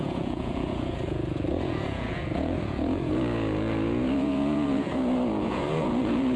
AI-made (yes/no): yes